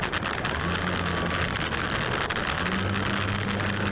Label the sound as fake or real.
real